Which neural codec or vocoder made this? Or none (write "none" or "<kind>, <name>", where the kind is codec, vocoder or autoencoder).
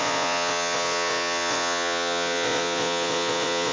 vocoder, Vocos